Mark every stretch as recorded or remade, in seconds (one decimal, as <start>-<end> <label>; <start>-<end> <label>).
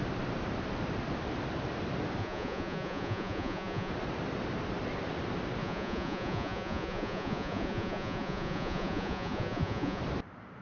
0.0-2.2 recorded; 2.2-3.9 remade; 3.9-5.6 recorded; 5.6-10.0 remade; 10.0-10.6 recorded